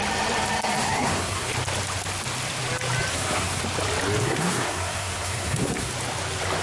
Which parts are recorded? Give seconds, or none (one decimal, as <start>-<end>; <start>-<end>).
0.0-0.8; 1.5-3.1; 3.6-4.2; 5.9-6.6

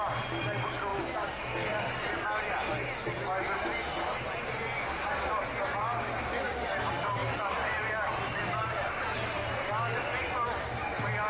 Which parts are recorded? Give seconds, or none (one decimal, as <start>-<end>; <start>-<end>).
0.0-11.3

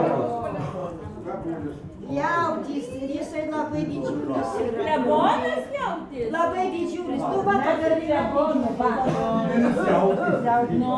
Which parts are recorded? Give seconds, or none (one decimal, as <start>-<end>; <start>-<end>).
0.0-5.0; 6.3-8.3; 9.1-11.0

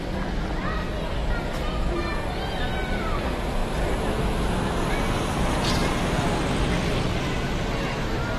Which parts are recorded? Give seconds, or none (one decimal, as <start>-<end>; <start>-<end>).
0.0-8.4

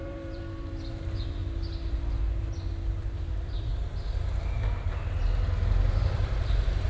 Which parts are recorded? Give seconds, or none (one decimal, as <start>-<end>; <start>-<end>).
1.4-3.2; 3.7-5.9

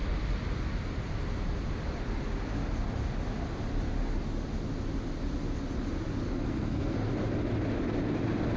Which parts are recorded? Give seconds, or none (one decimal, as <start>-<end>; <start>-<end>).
0.0-6.3; 7.1-8.6

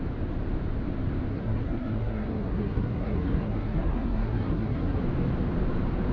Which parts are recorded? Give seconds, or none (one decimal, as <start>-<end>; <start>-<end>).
0.0-1.3; 5.0-6.1

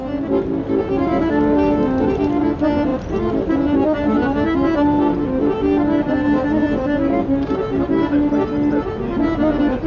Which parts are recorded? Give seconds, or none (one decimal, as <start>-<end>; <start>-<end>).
0.0-9.9